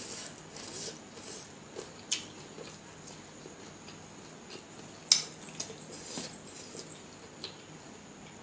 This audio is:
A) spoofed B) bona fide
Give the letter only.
B